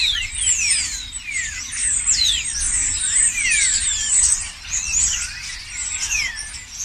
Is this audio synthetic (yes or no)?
no